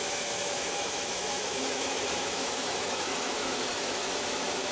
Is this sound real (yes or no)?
no